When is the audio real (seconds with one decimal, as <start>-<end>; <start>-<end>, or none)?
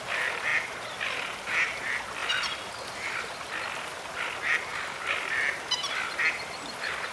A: none